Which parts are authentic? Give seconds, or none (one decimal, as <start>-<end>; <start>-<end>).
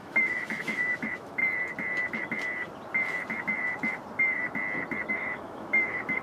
1.4-5.1